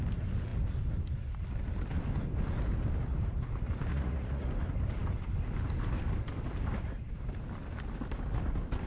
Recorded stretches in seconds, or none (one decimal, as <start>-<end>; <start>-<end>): 0.0-3.9; 4.5-8.9